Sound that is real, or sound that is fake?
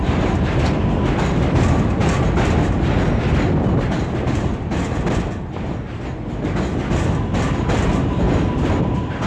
real